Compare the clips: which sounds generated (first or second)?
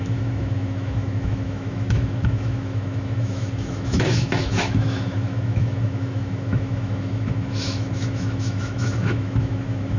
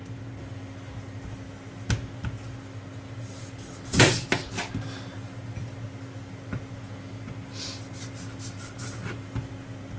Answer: first